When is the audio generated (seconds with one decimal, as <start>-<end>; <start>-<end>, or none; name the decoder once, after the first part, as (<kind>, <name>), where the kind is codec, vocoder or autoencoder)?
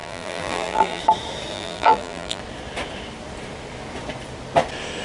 0.0-1.0 (vocoder, BigVGAN v2); 1.5-2.4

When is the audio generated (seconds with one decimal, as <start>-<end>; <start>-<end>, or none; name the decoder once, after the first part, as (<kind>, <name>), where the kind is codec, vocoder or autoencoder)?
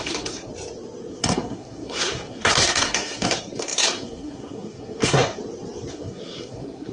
0.0-0.5 (codec, SNAC); 1.1-5.4; 5.9-6.9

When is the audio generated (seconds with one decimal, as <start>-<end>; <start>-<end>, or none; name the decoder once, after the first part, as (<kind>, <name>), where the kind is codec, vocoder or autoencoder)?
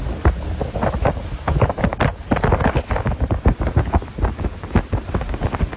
none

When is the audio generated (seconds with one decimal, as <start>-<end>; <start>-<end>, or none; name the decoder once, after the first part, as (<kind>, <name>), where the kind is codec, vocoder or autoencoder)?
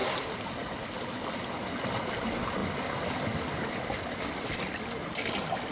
none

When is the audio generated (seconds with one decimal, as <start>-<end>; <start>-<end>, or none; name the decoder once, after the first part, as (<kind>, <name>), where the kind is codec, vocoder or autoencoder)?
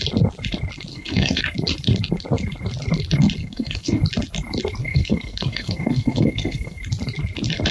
0.9-1.4 (codec, SNAC); 3.4-4.0; 4.8-6.8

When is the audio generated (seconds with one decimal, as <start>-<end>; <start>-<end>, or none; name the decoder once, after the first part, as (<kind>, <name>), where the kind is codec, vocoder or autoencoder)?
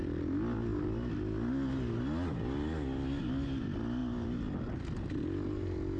none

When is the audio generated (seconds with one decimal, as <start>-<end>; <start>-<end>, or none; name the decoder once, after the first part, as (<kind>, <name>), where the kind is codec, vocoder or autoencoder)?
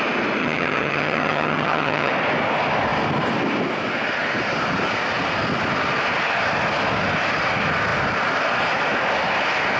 0.4-2.1 (vocoder, HiFi-GAN)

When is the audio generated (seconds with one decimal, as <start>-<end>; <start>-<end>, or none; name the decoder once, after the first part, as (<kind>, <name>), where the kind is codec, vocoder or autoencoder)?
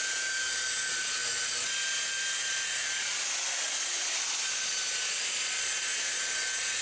none